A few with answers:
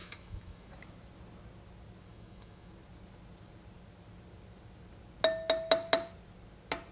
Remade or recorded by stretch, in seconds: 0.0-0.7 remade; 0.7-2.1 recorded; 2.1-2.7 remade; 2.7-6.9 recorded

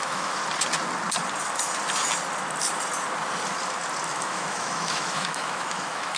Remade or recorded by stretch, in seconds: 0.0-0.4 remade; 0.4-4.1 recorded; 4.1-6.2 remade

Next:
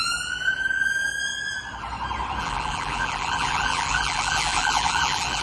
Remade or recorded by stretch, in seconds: 0.0-1.2 remade; 1.2-2.4 recorded; 2.4-5.4 remade

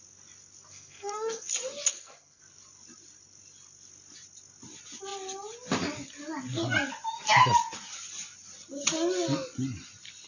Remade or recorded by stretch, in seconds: 0.0-0.7 recorded; 0.7-1.5 remade; 1.5-1.9 recorded; 1.9-2.4 remade; 2.4-10.3 recorded

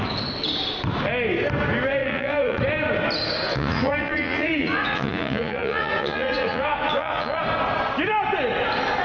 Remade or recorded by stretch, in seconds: 0.0-2.0 recorded; 2.0-2.6 remade; 2.6-3.5 recorded; 3.5-7.4 remade; 7.4-9.0 recorded

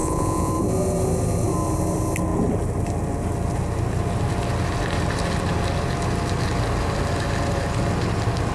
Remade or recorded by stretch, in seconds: 0.0-0.5 remade; 0.5-8.5 recorded

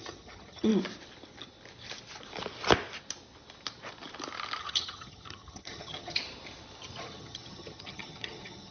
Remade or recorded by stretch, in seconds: 0.0-0.7 remade; 0.7-4.6 recorded; 4.6-6.2 remade; 6.2-7.0 recorded; 7.0-8.7 remade